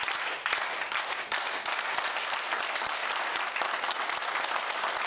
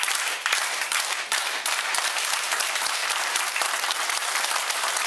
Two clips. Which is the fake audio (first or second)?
second